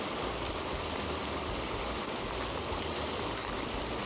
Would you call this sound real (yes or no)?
yes